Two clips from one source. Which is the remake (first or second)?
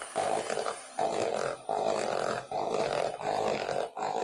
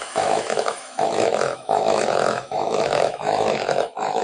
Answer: second